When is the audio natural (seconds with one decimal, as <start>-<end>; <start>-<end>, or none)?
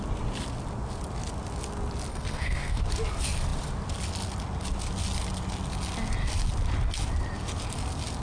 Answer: 0.0-2.1; 2.8-8.2